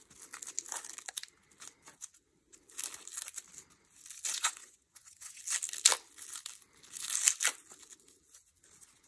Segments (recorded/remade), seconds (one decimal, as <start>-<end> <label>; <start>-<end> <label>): 0.0-4.3 recorded; 4.3-5.4 remade; 5.4-9.1 recorded